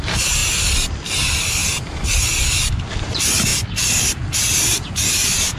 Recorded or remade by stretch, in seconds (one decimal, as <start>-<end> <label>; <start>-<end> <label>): 0.0-0.4 remade; 0.4-0.9 recorded; 0.9-1.6 remade; 1.6-2.7 recorded; 2.7-5.6 remade